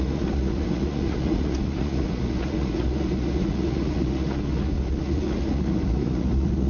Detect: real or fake fake